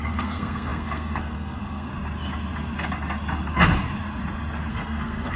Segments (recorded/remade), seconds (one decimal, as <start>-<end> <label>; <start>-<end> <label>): 0.0-1.9 remade; 1.9-4.7 recorded; 4.7-5.4 remade